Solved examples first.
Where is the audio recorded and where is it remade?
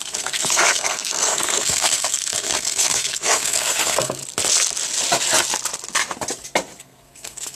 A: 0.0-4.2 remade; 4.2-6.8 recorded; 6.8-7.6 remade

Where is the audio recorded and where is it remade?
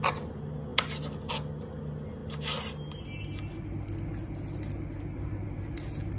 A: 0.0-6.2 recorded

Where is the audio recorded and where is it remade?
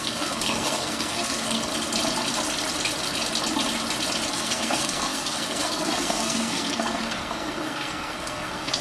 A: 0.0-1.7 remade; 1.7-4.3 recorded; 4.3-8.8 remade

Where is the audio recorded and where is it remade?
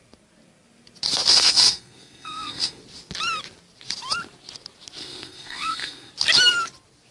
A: 0.0-1.3 recorded; 1.3-2.8 remade; 2.8-5.0 recorded; 5.0-6.1 remade; 6.1-7.1 recorded